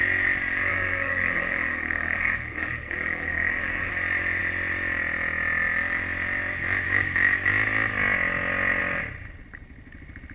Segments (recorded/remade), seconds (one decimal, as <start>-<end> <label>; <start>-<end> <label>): 0.0-0.7 recorded; 0.7-3.9 remade; 3.9-10.3 recorded